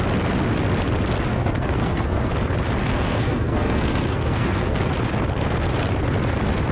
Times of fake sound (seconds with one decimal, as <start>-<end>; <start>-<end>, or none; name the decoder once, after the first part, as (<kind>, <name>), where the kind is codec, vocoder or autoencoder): 1.3-2.3 (codec, SNAC); 2.8-4.9